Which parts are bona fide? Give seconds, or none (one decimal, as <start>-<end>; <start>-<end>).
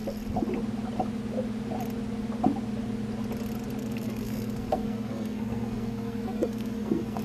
0.0-3.8